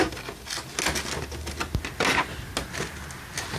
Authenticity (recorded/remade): recorded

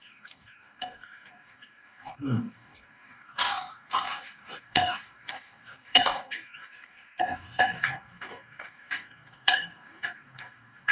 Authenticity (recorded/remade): remade